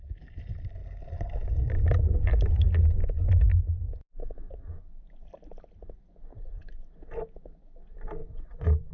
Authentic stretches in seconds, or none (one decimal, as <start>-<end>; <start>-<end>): 0.0-6.3; 6.8-8.2

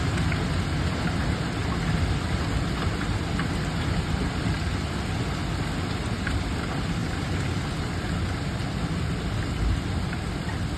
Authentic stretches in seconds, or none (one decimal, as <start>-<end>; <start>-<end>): 0.0-10.8